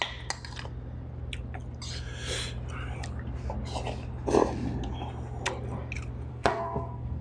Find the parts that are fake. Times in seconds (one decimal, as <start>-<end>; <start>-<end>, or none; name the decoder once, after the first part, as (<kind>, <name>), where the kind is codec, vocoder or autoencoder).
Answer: 6.3-7.2 (codec, SNAC)